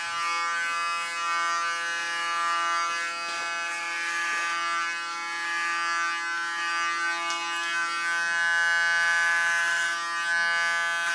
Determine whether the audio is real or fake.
real